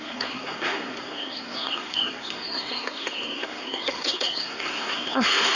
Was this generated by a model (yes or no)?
yes